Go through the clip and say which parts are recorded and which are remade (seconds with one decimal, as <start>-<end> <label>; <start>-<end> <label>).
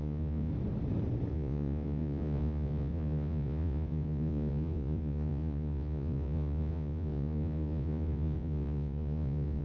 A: 0.0-0.5 remade; 0.5-1.3 recorded; 1.3-9.6 remade